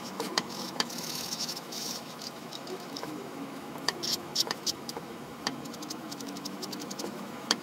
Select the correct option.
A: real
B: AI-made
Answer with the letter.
B